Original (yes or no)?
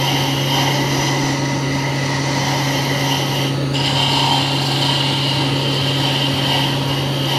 yes